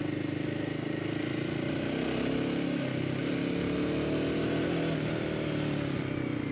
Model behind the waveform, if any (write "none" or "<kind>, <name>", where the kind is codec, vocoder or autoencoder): none